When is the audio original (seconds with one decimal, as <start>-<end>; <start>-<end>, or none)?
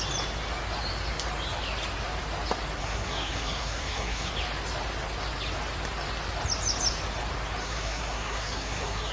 0.0-2.8; 4.3-7.6